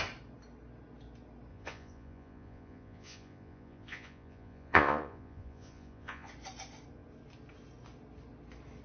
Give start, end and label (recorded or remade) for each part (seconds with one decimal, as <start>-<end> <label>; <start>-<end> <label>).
0.0-1.5 recorded; 1.5-6.3 remade; 6.3-8.8 recorded